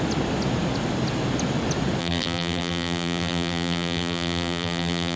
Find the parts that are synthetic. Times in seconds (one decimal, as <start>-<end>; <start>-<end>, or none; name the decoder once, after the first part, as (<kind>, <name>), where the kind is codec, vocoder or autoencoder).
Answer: 2.0-5.2 (vocoder, BigVGAN v2)